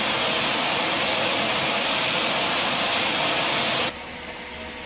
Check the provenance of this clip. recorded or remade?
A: recorded